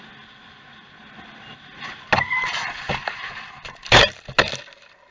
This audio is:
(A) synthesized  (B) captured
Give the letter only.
B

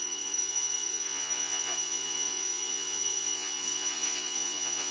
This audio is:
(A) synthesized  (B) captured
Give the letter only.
A